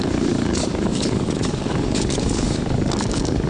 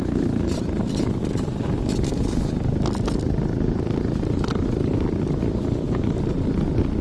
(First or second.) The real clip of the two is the second